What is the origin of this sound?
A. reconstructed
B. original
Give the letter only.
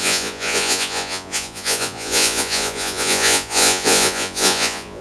A